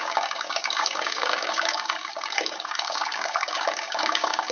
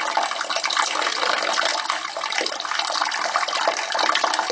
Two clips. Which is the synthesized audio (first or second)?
first